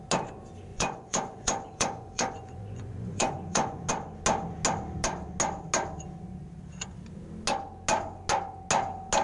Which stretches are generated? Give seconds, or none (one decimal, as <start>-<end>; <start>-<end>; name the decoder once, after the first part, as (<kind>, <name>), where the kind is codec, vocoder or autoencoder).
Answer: 0.7-3.9 (vocoder, Vocos)